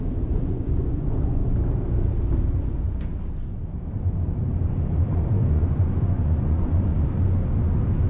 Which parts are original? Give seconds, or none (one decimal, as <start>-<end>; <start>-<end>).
1.4-5.1; 6.9-8.1